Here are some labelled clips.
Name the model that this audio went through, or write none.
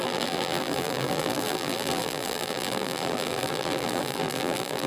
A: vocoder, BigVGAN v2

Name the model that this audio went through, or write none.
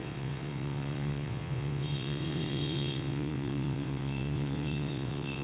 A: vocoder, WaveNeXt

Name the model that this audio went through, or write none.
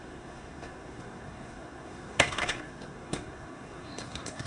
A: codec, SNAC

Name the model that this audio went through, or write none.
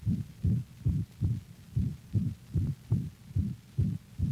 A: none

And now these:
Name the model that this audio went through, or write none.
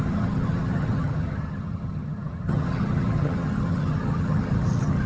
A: vocoder, HiFi-GAN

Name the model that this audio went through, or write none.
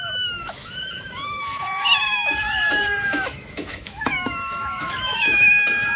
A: autoencoder, DAC-VAE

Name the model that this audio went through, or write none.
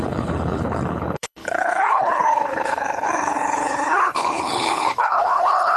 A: codec, HILCodec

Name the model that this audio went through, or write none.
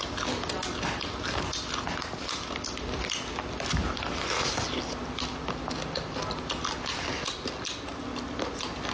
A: none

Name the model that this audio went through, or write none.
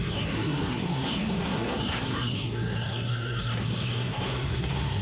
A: codec, SNAC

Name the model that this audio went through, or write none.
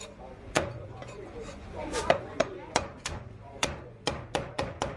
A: vocoder, Vocos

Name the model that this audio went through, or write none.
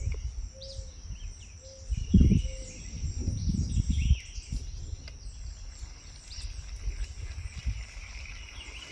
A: none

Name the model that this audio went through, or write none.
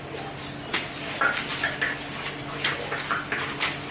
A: none